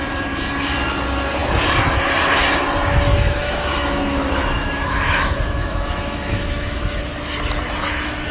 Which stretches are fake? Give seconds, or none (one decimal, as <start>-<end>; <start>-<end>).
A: 3.1-7.0